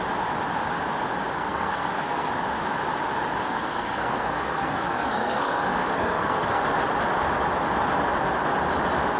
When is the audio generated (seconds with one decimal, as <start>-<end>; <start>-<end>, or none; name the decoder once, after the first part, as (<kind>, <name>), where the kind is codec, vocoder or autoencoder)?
1.3-2.3 (codec, SNAC); 3.4-6.6